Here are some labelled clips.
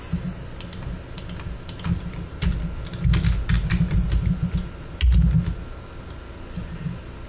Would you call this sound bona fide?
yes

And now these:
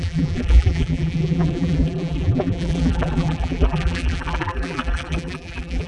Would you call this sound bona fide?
no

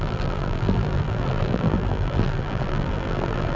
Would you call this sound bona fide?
no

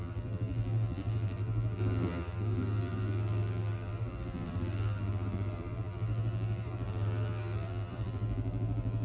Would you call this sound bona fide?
no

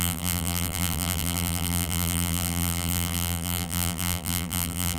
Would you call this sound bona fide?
no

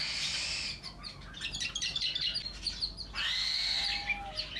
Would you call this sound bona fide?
yes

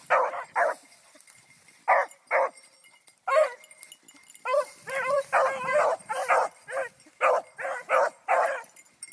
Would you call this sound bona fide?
no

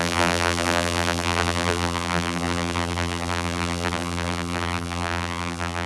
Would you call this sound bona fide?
no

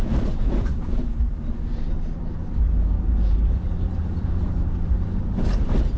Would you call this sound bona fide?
no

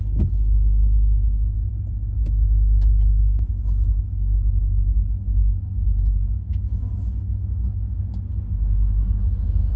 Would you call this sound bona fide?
yes